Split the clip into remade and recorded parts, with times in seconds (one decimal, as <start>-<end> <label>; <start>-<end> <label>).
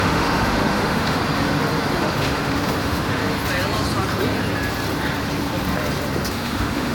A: 0.0-1.2 remade; 1.2-2.0 recorded; 2.0-3.2 remade; 3.2-6.3 recorded; 6.3-6.9 remade